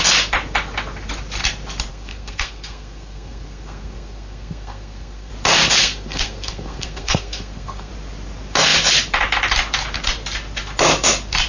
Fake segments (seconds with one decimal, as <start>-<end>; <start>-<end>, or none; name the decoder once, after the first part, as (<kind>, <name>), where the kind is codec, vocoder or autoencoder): 1.9-5.3 (codec, SNAC); 5.8-7.9